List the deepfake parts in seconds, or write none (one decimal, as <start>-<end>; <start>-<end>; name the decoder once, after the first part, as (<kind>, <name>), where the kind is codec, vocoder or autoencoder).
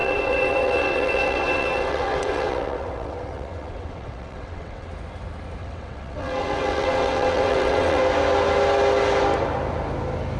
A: 0.0-4.9 (vocoder, WaveNeXt); 5.6-8.0